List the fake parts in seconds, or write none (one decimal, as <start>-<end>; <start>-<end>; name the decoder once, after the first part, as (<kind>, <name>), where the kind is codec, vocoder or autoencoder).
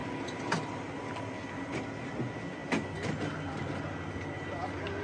none